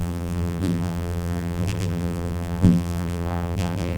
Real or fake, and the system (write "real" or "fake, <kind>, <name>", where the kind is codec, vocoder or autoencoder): fake, vocoder, BigVGAN v2